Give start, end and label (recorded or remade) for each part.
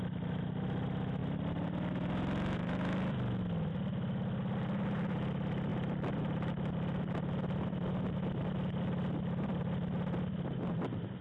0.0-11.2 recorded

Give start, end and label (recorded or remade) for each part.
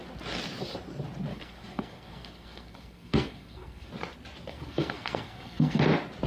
0.0-1.3 recorded; 1.3-3.9 remade; 3.9-4.5 recorded; 4.5-5.8 remade; 5.8-6.3 recorded